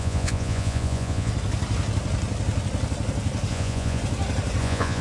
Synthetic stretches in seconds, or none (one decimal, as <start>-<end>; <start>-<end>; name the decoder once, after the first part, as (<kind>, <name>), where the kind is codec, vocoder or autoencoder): 0.0-1.3 (vocoder, Vocos); 3.5-4.0; 4.6-5.0